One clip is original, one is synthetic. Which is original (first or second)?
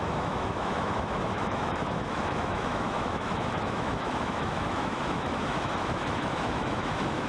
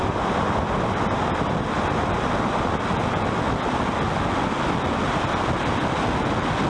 second